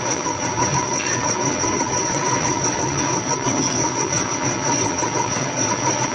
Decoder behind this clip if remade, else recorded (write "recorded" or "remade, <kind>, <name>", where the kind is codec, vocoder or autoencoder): remade, vocoder, WaveNeXt